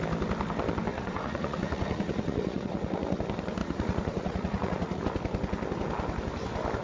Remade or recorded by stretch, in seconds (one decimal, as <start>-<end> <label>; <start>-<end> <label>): 0.0-0.9 recorded; 0.9-3.2 remade; 3.2-3.6 recorded; 3.6-5.0 remade; 5.0-6.8 recorded